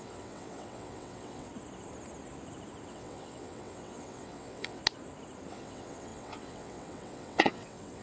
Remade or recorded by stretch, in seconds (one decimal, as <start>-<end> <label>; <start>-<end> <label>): 0.0-1.5 remade; 1.5-2.9 recorded; 2.9-4.8 remade; 4.8-5.5 recorded; 5.5-8.0 remade